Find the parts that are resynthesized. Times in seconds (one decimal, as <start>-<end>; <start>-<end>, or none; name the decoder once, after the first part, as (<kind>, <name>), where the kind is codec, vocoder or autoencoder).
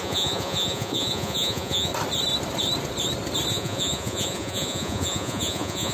0.0-1.9 (vocoder, Vocos); 3.5-5.9